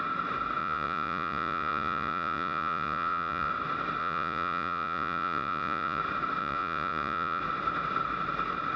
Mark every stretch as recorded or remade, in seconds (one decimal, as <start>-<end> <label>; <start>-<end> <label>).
0.0-0.6 recorded; 0.6-3.5 remade; 3.5-4.0 recorded; 4.0-6.0 remade; 6.0-6.4 recorded; 6.4-7.4 remade; 7.4-8.8 recorded